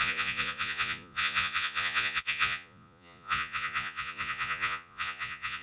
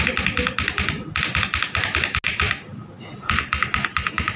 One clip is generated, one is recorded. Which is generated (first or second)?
first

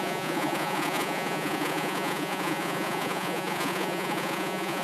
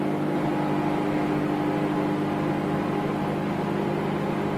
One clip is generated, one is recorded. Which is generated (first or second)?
first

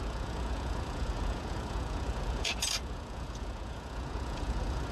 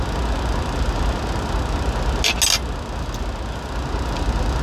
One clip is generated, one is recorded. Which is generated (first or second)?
first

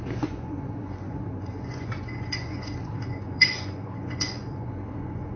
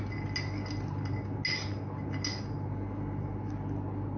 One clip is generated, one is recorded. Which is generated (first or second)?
first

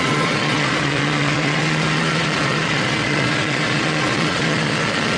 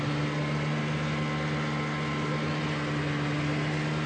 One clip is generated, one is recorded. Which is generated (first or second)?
first